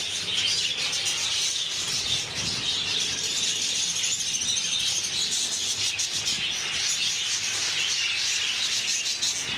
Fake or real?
real